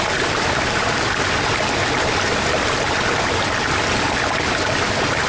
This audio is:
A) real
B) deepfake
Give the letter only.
A